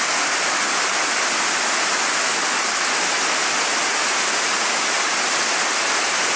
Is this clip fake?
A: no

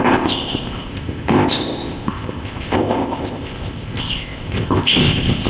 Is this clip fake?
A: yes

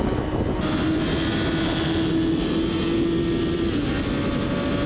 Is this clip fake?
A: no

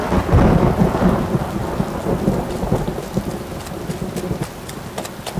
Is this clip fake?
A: no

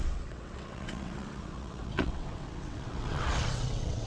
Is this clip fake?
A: yes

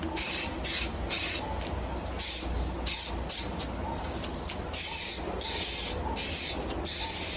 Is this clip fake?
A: no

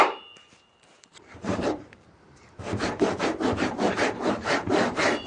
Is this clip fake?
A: yes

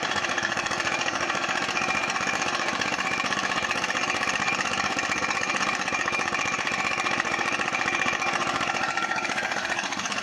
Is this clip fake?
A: yes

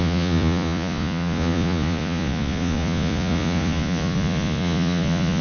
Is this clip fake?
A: yes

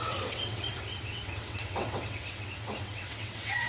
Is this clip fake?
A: yes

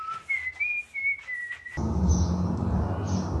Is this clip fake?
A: no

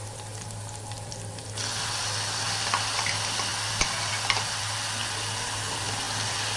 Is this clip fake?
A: no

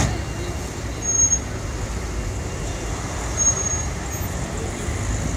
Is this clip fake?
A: no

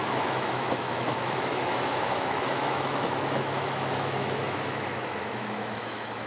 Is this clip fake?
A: yes